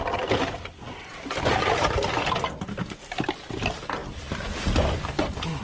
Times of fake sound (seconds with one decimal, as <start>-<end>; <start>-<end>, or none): none